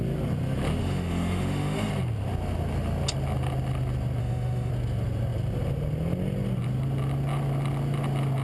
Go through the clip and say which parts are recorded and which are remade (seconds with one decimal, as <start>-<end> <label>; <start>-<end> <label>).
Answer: 0.0-0.8 recorded; 0.8-1.9 remade; 1.9-4.2 recorded; 4.2-4.7 remade; 4.7-8.4 recorded